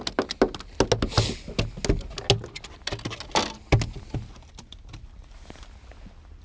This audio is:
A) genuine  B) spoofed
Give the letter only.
A